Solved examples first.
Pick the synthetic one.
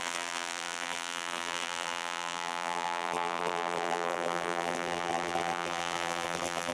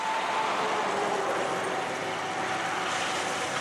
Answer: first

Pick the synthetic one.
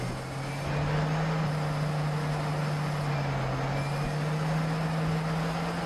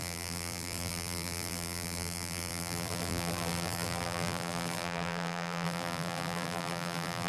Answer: second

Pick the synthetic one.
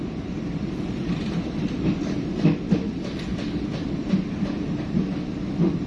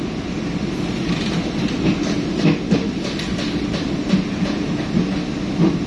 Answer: first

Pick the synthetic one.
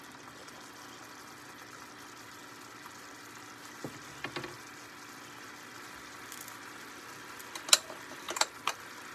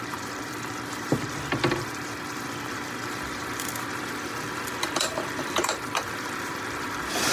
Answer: second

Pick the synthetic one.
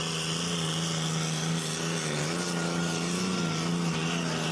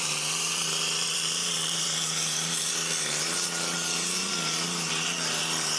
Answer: second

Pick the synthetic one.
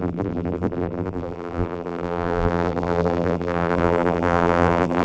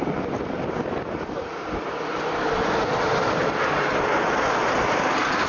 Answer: first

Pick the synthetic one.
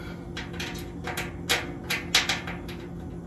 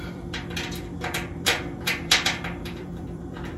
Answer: second